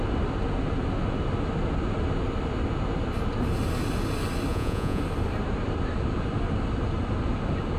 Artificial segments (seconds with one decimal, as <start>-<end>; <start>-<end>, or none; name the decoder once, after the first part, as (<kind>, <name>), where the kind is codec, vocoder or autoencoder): 4.5-5.0 (vocoder, Vocos)